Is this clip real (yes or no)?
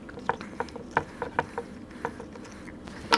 yes